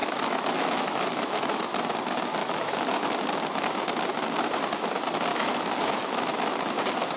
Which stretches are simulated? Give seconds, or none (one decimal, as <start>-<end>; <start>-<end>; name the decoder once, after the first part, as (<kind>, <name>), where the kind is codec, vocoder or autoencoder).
0.0-1.6 (autoencoder, DAC-VAE); 2.4-3.0; 5.3-6.2